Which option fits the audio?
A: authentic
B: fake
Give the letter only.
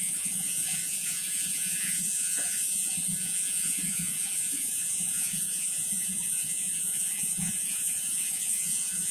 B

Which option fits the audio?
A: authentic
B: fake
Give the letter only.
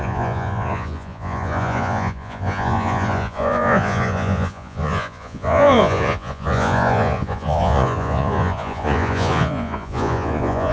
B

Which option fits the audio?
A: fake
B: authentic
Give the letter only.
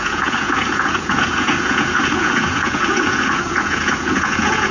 A